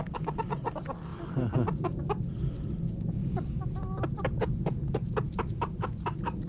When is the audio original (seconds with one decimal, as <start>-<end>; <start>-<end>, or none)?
0.0-6.5